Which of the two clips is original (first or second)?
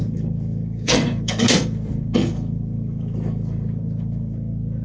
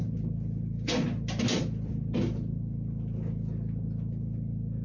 second